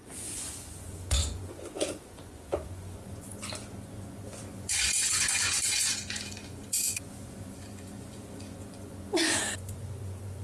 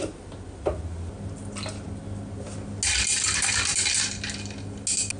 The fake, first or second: first